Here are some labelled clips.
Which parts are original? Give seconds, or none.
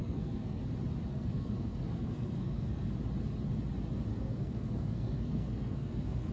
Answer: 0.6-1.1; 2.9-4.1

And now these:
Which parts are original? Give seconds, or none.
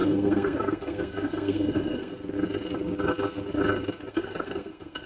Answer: 2.1-4.1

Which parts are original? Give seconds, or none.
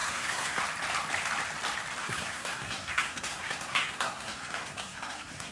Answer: 0.6-2.0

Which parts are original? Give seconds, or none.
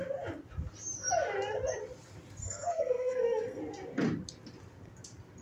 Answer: 0.0-2.4; 3.6-5.4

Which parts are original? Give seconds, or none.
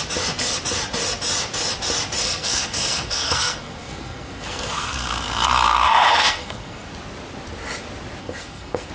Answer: 0.0-2.2; 6.9-8.2